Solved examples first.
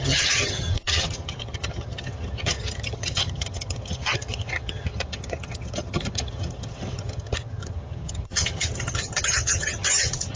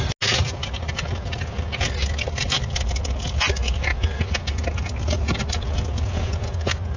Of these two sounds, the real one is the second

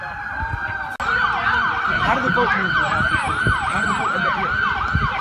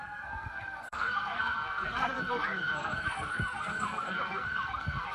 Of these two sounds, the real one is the first